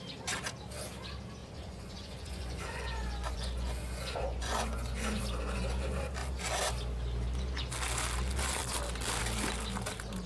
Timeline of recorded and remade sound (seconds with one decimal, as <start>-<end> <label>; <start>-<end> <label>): 0.0-1.4 recorded; 1.4-5.2 remade; 5.2-10.3 recorded